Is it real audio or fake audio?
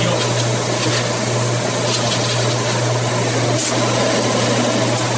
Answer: real